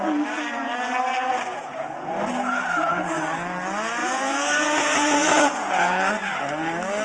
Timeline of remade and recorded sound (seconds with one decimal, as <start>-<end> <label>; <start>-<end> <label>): 0.0-1.5 recorded; 1.5-2.1 remade; 2.1-4.0 recorded; 4.0-6.1 remade; 6.1-7.0 recorded